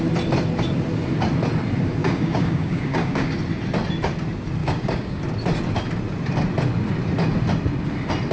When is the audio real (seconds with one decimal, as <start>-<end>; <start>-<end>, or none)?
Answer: 0.0-2.0; 3.3-4.6; 5.2-8.3